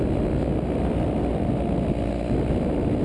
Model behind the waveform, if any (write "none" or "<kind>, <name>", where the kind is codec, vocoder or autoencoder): none